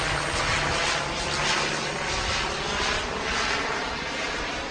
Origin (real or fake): real